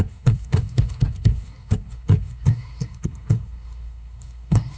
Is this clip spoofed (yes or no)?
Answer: yes